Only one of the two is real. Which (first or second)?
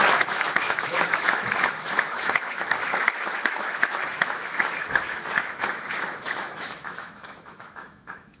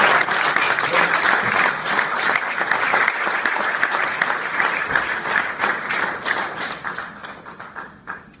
second